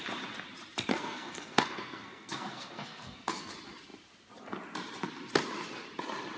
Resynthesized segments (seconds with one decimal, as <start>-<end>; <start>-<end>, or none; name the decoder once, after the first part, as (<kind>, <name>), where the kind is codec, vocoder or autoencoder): 0.9-3.5 (codec, SNAC)